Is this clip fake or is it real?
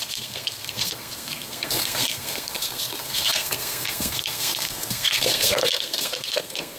fake